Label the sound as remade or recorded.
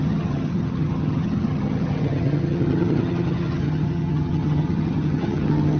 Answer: remade